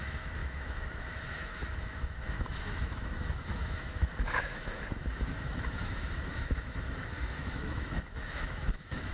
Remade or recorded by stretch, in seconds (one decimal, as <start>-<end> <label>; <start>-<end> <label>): 0.0-9.1 remade